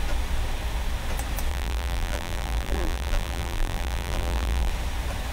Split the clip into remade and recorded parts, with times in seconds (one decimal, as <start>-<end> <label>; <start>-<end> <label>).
0.0-1.5 recorded; 1.5-4.7 remade; 4.7-5.3 recorded